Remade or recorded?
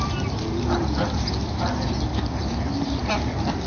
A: recorded